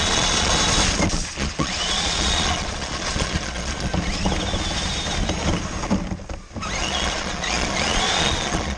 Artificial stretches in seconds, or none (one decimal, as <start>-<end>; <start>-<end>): 0.0-0.5; 1.1-3.9; 6.8-8.8